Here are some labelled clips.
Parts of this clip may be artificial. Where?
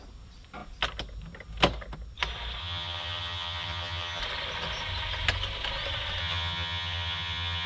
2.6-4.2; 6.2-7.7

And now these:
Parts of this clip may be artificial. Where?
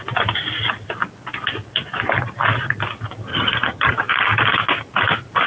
3.3-3.9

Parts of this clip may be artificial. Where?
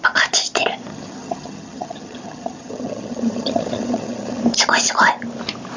0.9-4.4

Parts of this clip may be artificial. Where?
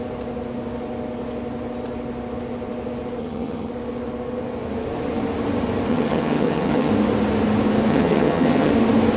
3.2-3.7; 5.9-6.9; 7.9-8.7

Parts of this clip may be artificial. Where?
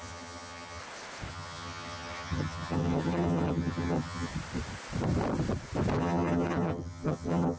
0.0-0.8; 1.3-4.3; 6.0-7.6